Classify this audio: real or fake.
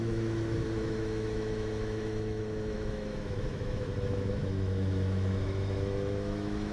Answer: fake